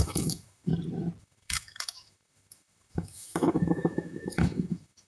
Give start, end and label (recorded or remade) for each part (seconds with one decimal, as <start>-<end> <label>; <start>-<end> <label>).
0.0-0.7 remade; 0.7-1.2 recorded; 1.2-5.1 remade